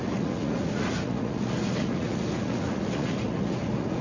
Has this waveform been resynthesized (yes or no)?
yes